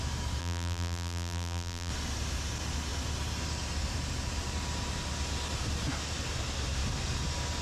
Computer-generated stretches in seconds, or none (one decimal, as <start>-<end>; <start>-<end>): 0.4-1.9

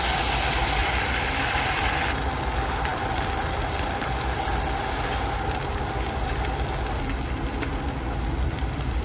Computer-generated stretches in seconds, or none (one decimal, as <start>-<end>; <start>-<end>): 0.8-2.1; 2.9-4.5

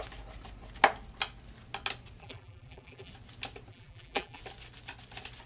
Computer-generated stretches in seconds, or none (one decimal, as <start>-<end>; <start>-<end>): 2.2-3.1; 3.7-4.4